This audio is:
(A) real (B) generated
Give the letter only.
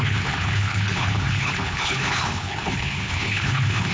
B